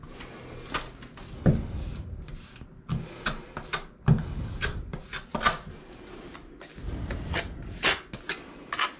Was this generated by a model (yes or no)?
no